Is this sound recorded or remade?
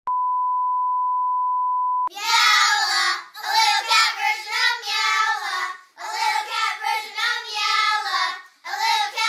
recorded